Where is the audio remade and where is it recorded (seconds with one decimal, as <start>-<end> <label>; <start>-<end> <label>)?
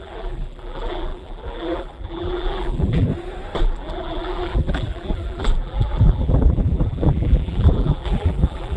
0.0-3.1 remade; 3.1-3.6 recorded; 3.6-8.8 remade